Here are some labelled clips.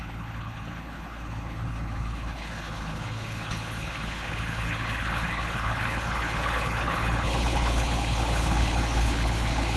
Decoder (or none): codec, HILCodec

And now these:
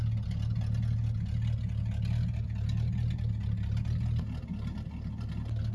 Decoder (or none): none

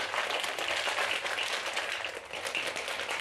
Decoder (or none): none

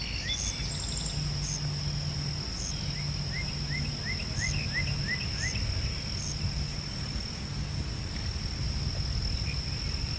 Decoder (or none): none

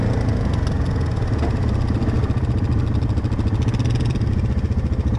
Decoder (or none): none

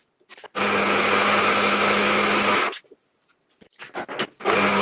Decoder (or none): none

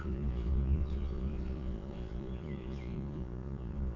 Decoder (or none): vocoder, Vocos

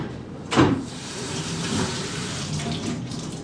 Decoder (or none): vocoder, BigVGAN v2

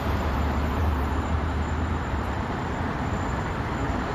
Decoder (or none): vocoder, BigVGAN v2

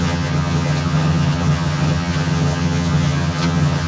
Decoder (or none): vocoder, HiFi-GAN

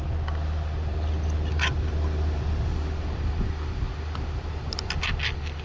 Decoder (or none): none